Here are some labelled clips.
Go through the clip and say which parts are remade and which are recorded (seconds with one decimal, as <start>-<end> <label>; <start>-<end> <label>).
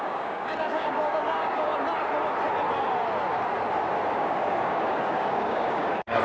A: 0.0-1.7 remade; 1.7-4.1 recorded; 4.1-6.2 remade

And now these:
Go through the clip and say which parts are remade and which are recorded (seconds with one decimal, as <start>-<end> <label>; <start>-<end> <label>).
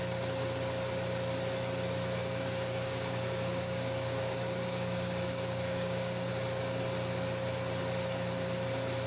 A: 0.0-2.2 recorded; 2.2-6.3 remade; 6.3-9.1 recorded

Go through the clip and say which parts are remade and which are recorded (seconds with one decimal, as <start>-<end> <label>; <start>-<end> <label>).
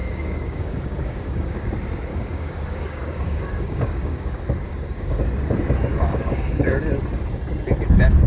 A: 0.0-1.7 remade; 1.7-2.1 recorded; 2.1-5.2 remade; 5.2-5.9 recorded; 5.9-6.8 remade; 6.8-8.3 recorded